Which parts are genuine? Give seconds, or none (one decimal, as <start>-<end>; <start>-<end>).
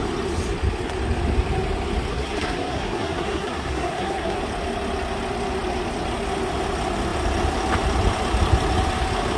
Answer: 0.0-2.1; 4.4-9.4